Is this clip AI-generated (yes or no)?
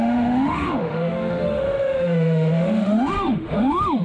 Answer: yes